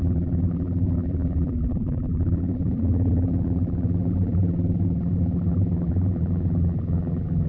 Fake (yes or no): yes